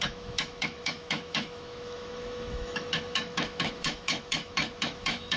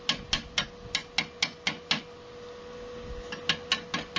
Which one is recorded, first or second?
second